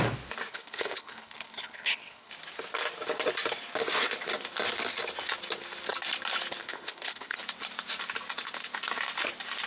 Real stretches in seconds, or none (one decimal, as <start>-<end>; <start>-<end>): 0.0-0.5; 2.3-6.6; 7.4-9.7